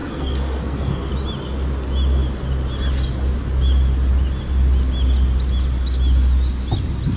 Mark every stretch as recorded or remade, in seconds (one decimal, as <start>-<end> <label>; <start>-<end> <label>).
0.0-1.1 remade; 1.1-7.2 recorded